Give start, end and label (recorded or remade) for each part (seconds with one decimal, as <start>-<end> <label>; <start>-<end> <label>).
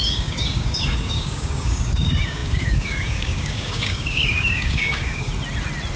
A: 0.0-5.3 remade; 5.3-6.0 recorded